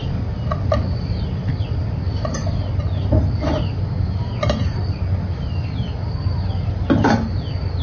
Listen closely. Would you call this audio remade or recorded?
recorded